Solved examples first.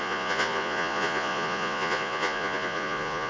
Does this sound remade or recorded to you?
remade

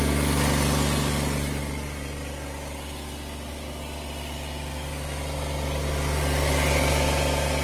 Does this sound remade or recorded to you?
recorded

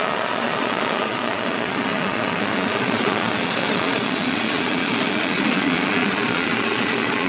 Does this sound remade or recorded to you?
remade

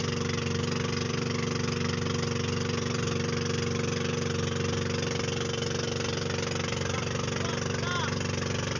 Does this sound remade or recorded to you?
recorded